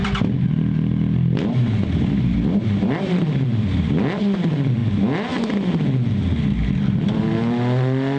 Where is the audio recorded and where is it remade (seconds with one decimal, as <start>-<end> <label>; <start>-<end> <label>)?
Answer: 0.0-4.8 remade; 4.8-6.9 recorded; 6.9-8.2 remade